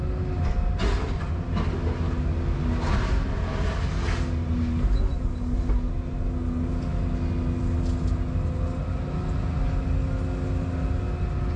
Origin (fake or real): real